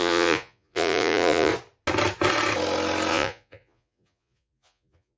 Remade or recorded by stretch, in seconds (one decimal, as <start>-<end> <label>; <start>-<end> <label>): 0.0-1.5 remade; 1.5-3.1 recorded; 3.1-5.2 remade